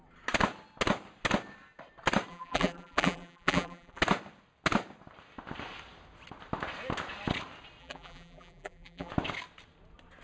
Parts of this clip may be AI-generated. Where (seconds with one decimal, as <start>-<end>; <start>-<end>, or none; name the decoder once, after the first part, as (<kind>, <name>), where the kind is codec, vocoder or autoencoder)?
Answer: 2.3-4.0 (vocoder, BigVGAN v2); 7.8-9.1